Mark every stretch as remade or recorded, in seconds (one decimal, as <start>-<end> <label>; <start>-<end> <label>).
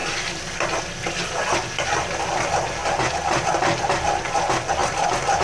0.0-5.4 recorded